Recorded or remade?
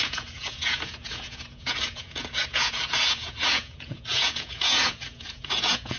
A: remade